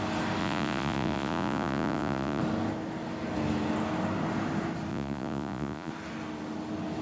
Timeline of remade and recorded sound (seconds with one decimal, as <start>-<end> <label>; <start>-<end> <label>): 0.0-0.4 recorded; 0.4-2.4 remade; 2.4-4.9 recorded; 4.9-5.9 remade; 5.9-7.0 recorded